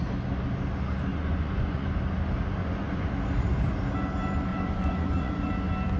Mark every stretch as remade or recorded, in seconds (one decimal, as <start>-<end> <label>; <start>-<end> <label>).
0.0-1.1 recorded; 1.1-1.9 remade; 1.9-2.6 recorded; 2.6-3.1 remade; 3.1-4.5 recorded; 4.5-5.5 remade; 5.5-6.0 recorded